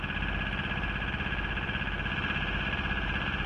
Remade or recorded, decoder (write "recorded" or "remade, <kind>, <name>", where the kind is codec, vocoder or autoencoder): recorded